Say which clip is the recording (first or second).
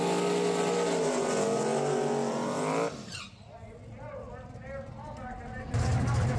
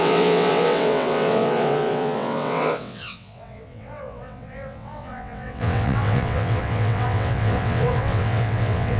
first